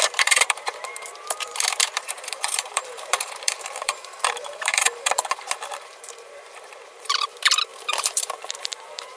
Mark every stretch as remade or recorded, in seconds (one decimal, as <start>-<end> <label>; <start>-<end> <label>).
0.0-9.2 remade